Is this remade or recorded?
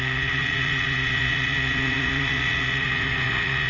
remade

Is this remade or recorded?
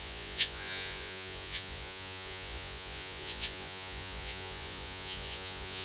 remade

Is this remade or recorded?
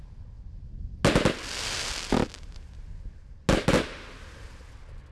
recorded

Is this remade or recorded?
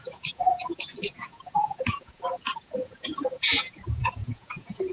remade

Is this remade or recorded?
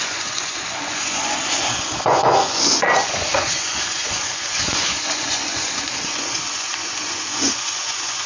remade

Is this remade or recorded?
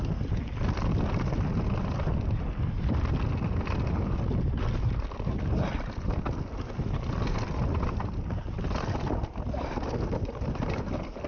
recorded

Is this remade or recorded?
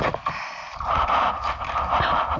recorded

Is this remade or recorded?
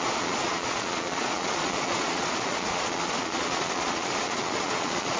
remade